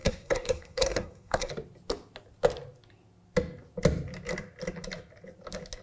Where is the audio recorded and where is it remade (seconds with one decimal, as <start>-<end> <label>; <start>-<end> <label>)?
0.0-1.5 remade; 1.5-5.8 recorded

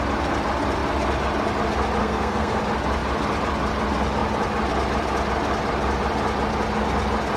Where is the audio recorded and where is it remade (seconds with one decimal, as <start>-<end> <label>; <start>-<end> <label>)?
0.0-2.0 recorded; 2.0-2.6 remade; 2.6-7.4 recorded

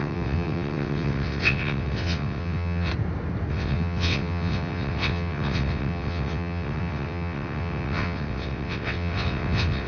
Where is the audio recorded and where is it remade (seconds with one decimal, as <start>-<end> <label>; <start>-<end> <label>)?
0.0-2.9 remade; 2.9-3.5 recorded; 3.5-9.9 remade

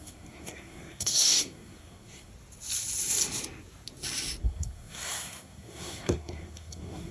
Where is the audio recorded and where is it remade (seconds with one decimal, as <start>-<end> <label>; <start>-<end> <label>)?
0.0-2.3 remade; 2.3-4.4 recorded; 4.4-7.1 remade

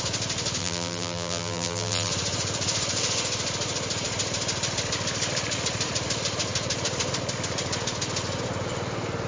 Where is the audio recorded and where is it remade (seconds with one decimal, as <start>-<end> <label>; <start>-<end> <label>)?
0.0-0.6 recorded; 0.6-2.1 remade; 2.1-9.3 recorded